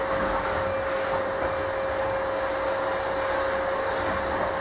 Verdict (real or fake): real